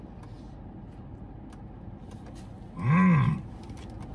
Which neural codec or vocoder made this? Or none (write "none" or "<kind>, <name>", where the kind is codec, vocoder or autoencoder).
none